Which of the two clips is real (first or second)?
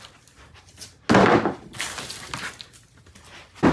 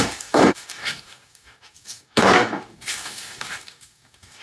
first